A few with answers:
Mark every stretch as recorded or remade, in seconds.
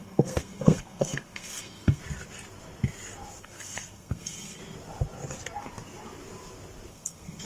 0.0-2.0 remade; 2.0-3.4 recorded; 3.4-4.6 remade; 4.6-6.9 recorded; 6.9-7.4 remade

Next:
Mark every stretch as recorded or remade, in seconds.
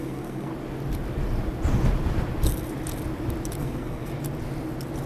0.0-0.5 remade; 0.5-3.6 recorded; 3.6-4.1 remade; 4.1-5.1 recorded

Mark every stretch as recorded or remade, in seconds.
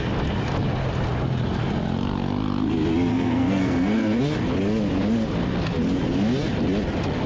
0.0-3.1 recorded; 3.1-4.2 remade; 4.2-7.3 recorded